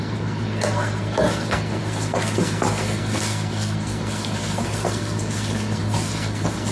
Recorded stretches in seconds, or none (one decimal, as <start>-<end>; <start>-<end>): none